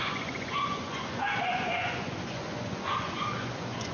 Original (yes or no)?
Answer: no